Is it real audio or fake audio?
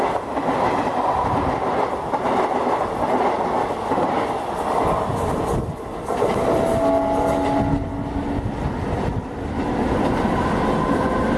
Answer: real